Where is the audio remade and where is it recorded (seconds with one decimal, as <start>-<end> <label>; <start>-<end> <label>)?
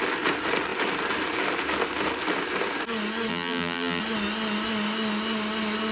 0.0-3.3 recorded; 3.3-4.0 remade; 4.0-5.9 recorded